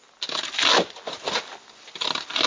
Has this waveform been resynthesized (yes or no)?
no